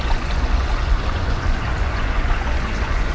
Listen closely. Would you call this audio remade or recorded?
remade